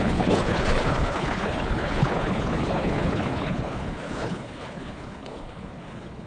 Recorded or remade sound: remade